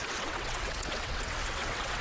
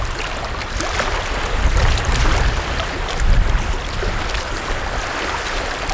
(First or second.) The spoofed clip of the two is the first